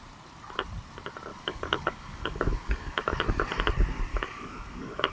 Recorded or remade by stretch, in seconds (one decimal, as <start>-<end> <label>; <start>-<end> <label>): 0.0-1.3 recorded; 1.3-3.2 remade; 3.2-4.1 recorded; 4.1-5.1 remade